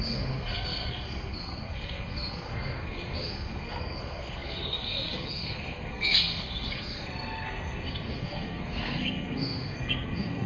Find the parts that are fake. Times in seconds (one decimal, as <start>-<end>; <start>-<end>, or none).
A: 0.0-10.5